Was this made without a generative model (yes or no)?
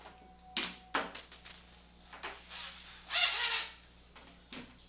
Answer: yes